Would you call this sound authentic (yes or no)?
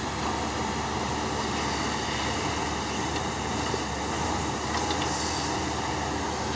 yes